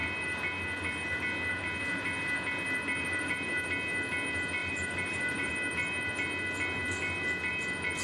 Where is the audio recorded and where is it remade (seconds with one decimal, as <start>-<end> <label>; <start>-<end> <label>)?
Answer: 0.0-3.0 recorded; 3.0-3.5 remade; 3.5-4.6 recorded; 4.6-5.5 remade; 5.5-8.0 recorded